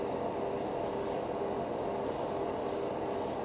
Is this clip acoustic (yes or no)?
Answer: yes